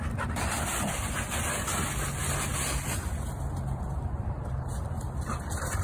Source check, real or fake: real